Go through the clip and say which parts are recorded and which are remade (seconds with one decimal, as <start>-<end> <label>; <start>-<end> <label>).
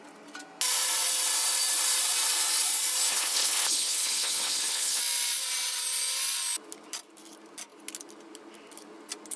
0.0-3.1 recorded; 3.1-5.0 remade; 5.0-9.4 recorded